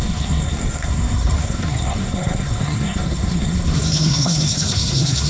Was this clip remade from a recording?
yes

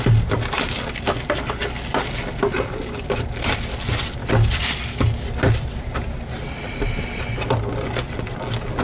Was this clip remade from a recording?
no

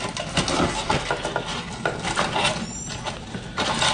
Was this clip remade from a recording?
no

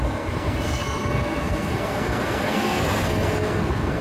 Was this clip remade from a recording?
yes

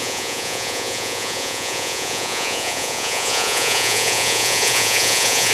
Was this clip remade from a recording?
yes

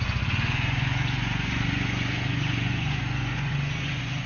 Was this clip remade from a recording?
yes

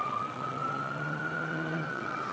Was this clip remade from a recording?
yes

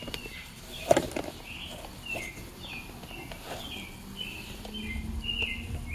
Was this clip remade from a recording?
no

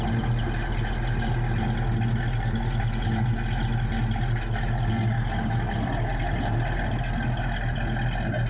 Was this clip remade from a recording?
no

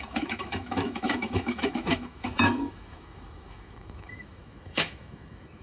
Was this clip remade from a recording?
yes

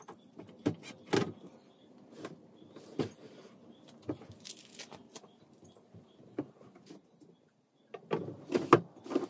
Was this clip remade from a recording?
no